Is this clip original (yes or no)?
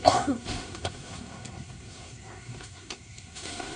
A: no